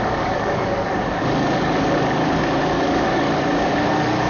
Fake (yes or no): yes